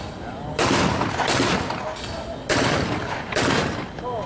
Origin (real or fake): real